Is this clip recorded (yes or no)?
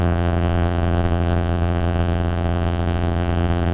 no